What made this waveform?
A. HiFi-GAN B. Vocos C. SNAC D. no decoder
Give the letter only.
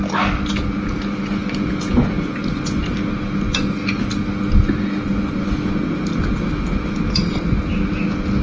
D